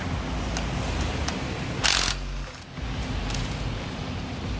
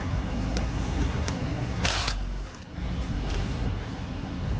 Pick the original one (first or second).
first